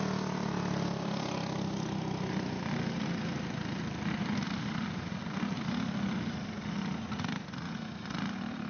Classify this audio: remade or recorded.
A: recorded